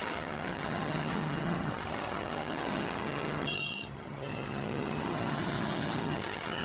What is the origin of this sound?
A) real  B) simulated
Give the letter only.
B